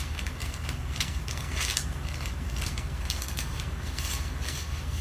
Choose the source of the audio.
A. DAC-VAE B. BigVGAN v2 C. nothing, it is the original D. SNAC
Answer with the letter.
D